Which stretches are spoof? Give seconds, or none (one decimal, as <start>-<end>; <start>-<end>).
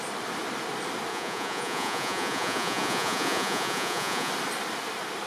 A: 1.1-4.3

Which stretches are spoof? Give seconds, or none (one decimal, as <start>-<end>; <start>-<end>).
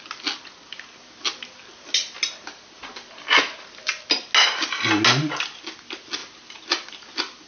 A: none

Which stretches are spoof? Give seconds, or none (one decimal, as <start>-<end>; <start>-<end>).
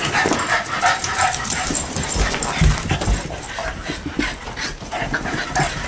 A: 1.0-4.5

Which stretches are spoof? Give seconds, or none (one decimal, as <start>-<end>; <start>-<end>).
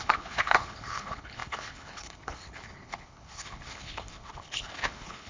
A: 0.0-5.3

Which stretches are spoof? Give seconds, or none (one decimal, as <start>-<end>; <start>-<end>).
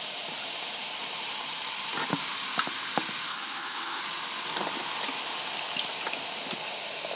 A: 3.3-4.0